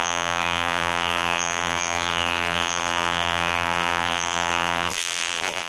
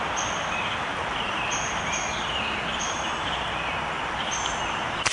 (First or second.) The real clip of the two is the second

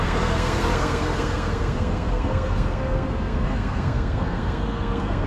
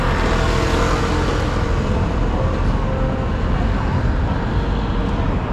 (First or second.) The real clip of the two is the second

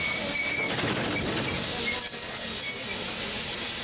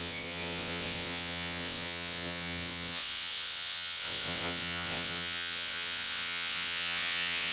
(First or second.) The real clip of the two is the first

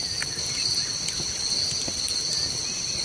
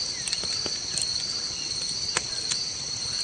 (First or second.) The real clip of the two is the first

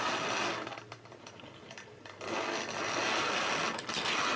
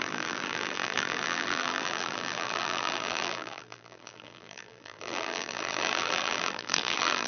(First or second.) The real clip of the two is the first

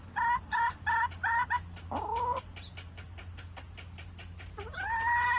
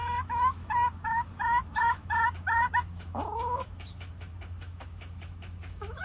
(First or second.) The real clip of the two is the first